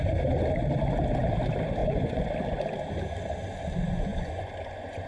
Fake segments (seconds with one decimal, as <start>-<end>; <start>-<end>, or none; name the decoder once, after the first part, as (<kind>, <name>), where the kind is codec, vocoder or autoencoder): 1.8-2.3 (vocoder, Vocos); 4.1-5.1